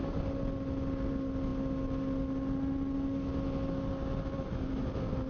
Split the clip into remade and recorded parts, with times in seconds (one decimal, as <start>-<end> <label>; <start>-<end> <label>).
0.0-5.3 recorded